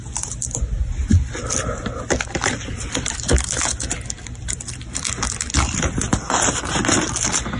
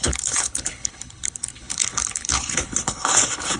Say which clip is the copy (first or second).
second